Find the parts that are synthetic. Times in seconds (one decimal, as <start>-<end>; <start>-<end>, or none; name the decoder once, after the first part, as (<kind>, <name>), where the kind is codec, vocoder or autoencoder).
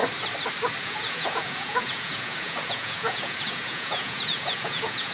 0.8-5.1 (vocoder, Vocos)